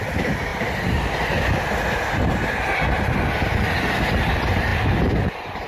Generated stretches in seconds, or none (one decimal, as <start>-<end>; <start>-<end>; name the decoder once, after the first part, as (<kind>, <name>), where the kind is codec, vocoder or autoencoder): none